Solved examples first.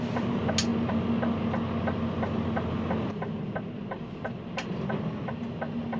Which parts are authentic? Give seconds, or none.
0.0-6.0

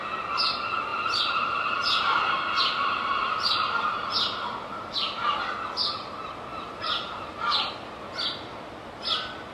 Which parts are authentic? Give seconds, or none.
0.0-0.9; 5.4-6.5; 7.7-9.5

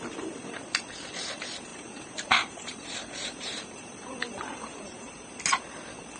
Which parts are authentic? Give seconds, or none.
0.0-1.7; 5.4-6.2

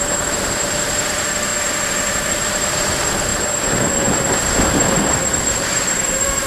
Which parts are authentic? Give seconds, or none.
1.5-2.1; 3.3-4.7

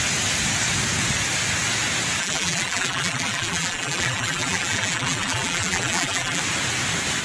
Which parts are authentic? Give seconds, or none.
0.0-2.2; 6.4-7.2

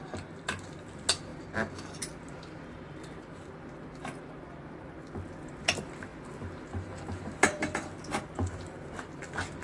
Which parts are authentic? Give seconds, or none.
0.0-9.6

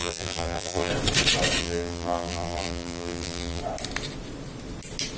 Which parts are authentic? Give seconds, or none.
0.9-1.6; 3.6-5.2